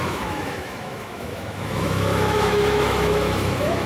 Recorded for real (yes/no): no